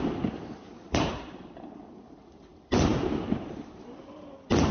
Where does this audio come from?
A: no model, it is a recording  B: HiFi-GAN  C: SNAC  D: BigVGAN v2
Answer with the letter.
A